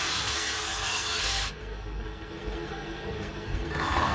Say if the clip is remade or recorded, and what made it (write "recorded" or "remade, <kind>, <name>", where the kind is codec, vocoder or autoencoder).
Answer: remade, codec, SNAC